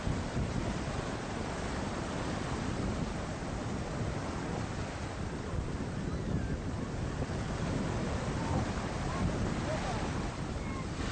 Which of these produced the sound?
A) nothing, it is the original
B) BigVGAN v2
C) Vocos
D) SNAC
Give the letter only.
A